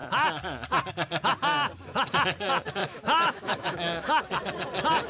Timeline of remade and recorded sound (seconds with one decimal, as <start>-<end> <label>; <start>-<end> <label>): 0.0-2.8 recorded; 2.8-4.2 remade; 4.2-5.1 recorded